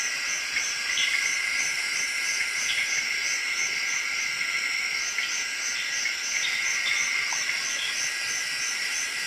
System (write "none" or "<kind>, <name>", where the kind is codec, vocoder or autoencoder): none